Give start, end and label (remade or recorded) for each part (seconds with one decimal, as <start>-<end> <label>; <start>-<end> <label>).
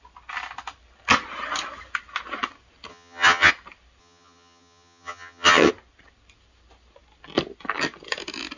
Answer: 0.0-2.9 recorded; 2.9-3.5 remade; 3.5-4.0 recorded; 4.0-5.7 remade; 5.7-8.6 recorded